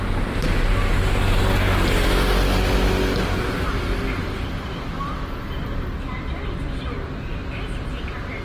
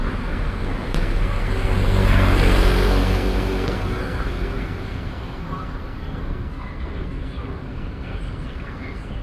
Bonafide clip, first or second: first